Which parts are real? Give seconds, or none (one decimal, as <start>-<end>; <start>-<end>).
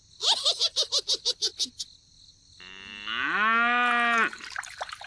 0.0-4.3